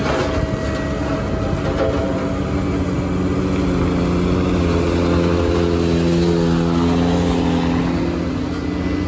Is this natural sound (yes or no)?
yes